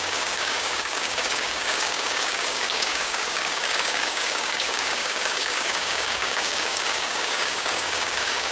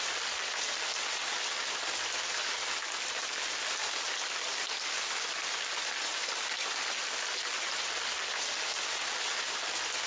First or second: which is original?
second